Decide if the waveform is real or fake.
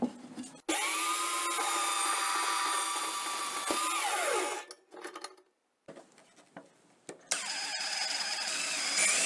real